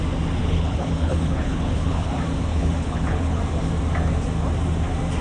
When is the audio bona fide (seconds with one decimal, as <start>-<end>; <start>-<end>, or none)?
0.0-0.4; 2.1-2.5; 3.4-5.2